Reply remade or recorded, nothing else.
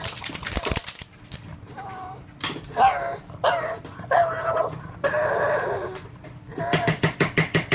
remade